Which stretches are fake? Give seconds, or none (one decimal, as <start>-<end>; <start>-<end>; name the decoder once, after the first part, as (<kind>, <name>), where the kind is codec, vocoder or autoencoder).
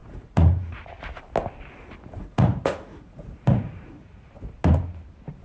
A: 0.0-0.8 (vocoder, Vocos); 2.2-4.3